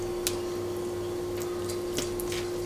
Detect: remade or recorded recorded